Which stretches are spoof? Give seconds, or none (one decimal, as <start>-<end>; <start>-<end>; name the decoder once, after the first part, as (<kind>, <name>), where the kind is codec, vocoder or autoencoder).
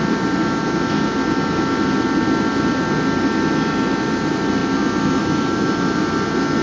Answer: none